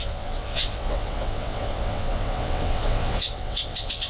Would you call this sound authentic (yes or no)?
no